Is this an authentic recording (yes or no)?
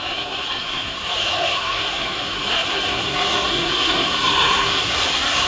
no